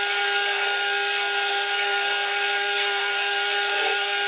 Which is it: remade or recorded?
remade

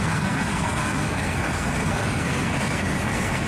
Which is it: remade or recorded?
remade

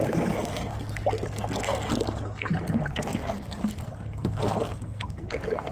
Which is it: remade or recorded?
remade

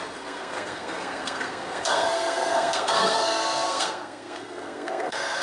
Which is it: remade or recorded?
remade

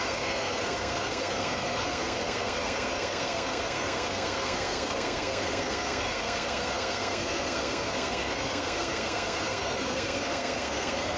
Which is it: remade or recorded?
remade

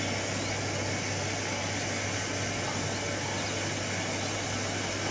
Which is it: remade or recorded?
recorded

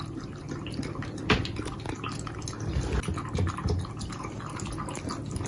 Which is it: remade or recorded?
recorded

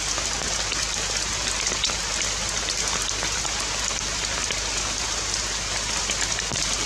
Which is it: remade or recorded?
recorded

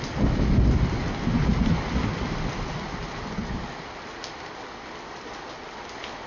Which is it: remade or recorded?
recorded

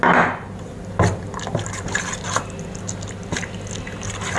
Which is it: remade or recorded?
recorded